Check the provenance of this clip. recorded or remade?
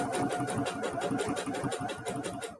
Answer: recorded